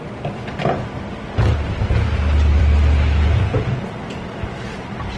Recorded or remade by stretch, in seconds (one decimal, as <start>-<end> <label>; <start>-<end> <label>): 0.0-3.3 recorded; 3.3-3.9 remade; 3.9-5.2 recorded